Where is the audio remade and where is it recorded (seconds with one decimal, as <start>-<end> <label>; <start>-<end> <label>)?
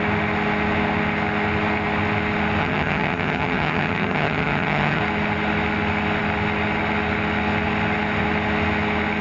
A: 0.0-2.6 recorded; 2.6-5.0 remade; 5.0-9.2 recorded